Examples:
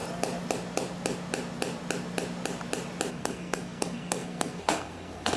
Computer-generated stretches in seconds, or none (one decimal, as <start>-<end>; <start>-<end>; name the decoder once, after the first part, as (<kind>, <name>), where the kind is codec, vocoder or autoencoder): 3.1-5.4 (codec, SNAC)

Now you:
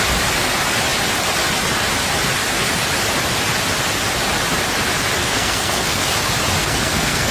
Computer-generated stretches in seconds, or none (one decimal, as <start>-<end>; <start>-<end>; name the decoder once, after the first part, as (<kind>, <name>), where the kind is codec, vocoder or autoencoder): 5.2-6.0 (codec, SNAC); 6.6-7.3

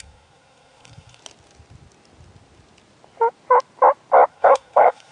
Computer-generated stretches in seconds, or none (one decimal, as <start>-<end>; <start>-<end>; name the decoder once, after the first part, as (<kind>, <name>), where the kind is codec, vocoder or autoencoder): 0.0-1.2 (codec, SNAC); 4.3-5.1

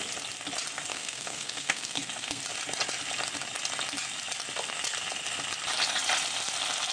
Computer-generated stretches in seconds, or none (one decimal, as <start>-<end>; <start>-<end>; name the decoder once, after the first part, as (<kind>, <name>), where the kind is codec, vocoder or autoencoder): 0.9-2.4 (codec, SNAC)

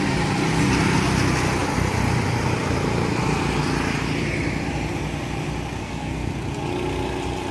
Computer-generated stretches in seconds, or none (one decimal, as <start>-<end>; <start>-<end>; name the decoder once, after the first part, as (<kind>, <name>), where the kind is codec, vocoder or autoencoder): 5.8-6.3 (codec, SNAC)

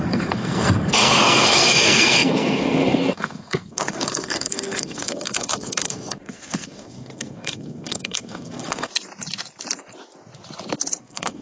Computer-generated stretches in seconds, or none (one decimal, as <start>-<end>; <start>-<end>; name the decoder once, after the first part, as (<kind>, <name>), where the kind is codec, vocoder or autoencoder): 0.0-8.9 (codec, SNAC); 11.0-11.4

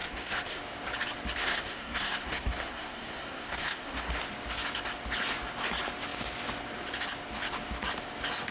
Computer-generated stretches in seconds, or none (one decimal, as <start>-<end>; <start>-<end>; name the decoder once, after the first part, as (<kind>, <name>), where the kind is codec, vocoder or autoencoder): 0.0-0.6 (codec, SNAC); 1.4-4.1

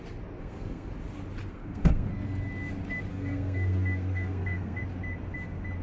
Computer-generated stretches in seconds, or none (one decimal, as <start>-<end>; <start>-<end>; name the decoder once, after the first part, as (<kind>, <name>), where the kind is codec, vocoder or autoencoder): 0.4-0.9 (codec, SNAC); 1.5-2.1; 3.1-4.8